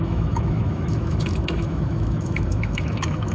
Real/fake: fake